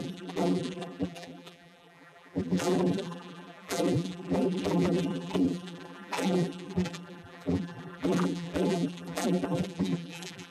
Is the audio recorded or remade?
remade